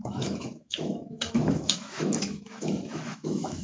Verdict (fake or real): fake